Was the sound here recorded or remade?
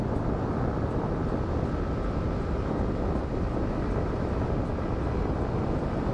recorded